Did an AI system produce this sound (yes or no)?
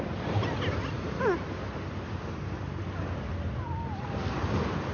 no